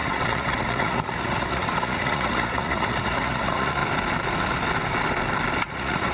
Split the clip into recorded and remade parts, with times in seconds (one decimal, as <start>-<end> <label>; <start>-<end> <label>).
0.0-3.8 remade; 3.8-5.6 recorded; 5.6-6.1 remade